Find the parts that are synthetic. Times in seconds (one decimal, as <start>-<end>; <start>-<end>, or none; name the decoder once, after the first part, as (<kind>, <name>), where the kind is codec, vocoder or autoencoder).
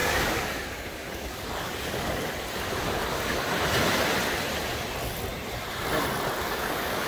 0.0-2.2 (codec, DAC); 6.4-7.1